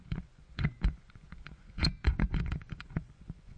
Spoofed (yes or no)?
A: yes